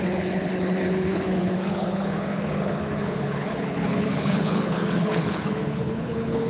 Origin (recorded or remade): remade